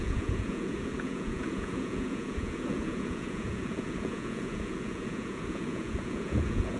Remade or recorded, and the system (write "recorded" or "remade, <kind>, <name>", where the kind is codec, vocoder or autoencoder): remade, vocoder, Vocos